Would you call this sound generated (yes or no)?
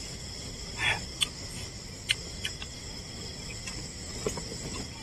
no